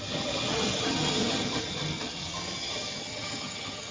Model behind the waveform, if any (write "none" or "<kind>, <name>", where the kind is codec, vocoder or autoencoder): vocoder, HiFi-GAN